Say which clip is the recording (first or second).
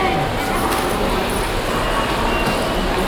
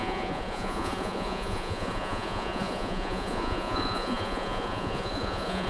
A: first